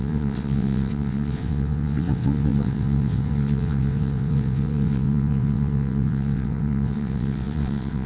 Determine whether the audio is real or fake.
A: fake